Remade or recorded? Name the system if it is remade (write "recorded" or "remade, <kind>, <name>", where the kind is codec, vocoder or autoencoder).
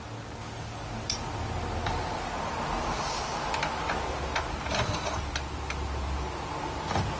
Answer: recorded